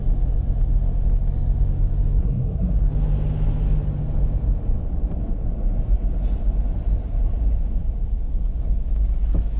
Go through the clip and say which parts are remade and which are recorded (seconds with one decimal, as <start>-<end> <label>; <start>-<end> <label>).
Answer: 0.0-2.2 recorded; 2.2-2.9 remade; 2.9-9.6 recorded